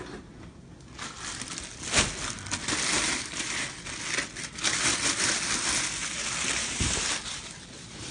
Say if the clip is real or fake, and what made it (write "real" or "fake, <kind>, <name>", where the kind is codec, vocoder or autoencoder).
real